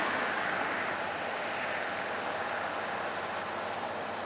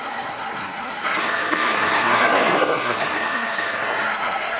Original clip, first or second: first